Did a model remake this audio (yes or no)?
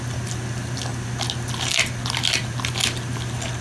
no